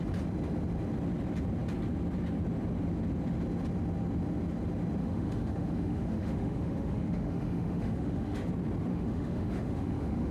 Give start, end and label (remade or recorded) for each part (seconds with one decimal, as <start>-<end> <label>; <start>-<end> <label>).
0.0-5.0 recorded; 5.0-8.5 remade; 8.5-8.9 recorded; 8.9-10.3 remade